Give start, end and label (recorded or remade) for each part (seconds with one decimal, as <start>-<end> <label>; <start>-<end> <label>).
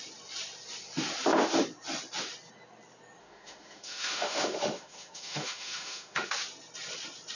0.0-3.2 recorded; 3.2-6.3 remade; 6.3-7.4 recorded